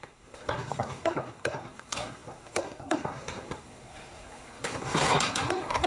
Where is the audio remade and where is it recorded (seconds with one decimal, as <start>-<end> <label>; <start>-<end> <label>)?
0.0-5.9 remade

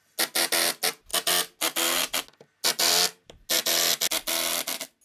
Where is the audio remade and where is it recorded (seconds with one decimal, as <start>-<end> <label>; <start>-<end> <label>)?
0.0-5.0 recorded

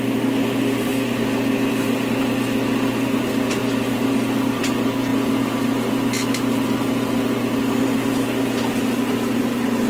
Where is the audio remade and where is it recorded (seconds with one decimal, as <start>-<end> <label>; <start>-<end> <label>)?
0.0-3.6 recorded; 3.6-4.6 remade; 4.6-9.9 recorded

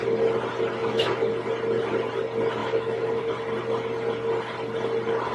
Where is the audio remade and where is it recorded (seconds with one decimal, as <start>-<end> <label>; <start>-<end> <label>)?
0.0-0.8 recorded; 0.8-1.3 remade; 1.3-2.6 recorded; 2.6-3.2 remade; 3.2-5.3 recorded

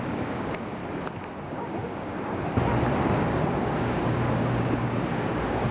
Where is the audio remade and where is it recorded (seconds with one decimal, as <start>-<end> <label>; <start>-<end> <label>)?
0.0-0.8 remade; 0.8-1.4 recorded; 1.4-2.5 remade; 2.5-3.6 recorded; 3.6-5.7 remade

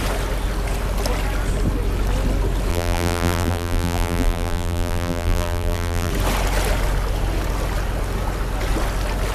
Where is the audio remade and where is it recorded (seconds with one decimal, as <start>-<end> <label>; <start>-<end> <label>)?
0.0-2.7 recorded; 2.7-6.1 remade; 6.1-9.3 recorded

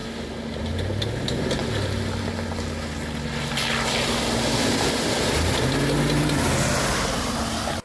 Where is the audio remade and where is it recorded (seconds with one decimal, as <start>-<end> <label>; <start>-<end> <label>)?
0.0-7.8 recorded